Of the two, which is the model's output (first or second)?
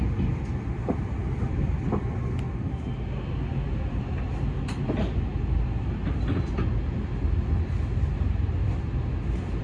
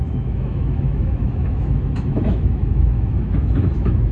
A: second